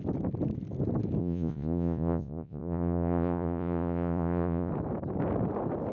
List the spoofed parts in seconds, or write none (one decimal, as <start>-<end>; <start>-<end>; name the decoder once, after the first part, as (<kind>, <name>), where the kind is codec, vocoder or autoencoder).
1.2-4.7 (vocoder, Vocos)